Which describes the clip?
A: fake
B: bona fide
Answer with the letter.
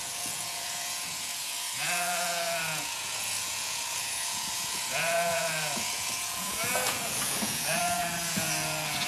A